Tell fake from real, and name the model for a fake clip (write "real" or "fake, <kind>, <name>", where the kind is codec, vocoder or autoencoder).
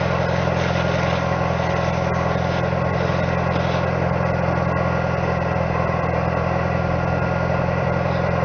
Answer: real